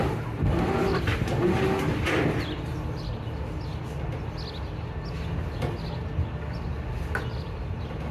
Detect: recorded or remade recorded